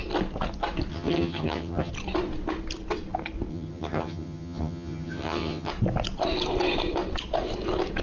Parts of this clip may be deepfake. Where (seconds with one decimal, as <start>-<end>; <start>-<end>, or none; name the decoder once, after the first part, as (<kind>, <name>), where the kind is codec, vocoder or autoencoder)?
0.9-1.9 (vocoder, HiFi-GAN); 3.5-5.7

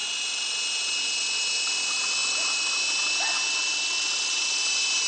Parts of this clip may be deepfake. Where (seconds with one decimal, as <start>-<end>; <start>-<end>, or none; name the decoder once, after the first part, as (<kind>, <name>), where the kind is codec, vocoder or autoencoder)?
none

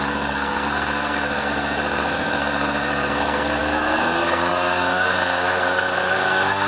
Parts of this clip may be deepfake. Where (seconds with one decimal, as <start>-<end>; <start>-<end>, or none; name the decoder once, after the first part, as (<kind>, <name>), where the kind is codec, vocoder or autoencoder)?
0.0-6.7 (codec, SNAC)